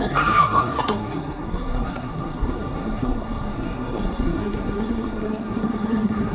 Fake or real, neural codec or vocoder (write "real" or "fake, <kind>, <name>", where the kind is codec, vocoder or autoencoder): fake, codec, SNAC